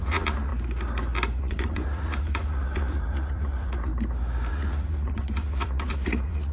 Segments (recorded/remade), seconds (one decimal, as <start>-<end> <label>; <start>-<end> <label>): 0.0-0.5 remade; 0.5-1.4 recorded; 1.4-3.9 remade; 3.9-4.5 recorded; 4.5-6.5 remade